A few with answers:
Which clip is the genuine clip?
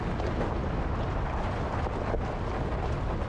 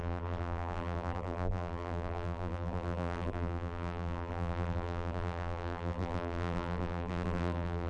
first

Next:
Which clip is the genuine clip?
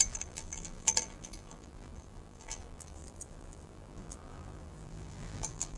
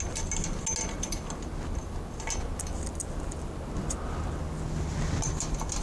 second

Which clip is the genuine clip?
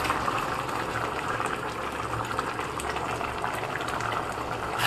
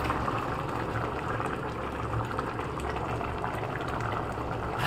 first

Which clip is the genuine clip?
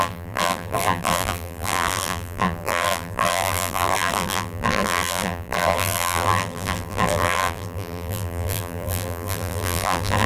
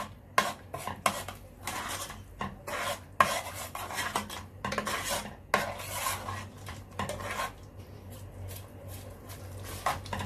second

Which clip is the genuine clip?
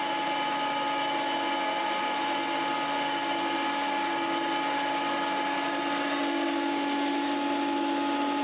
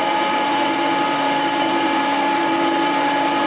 first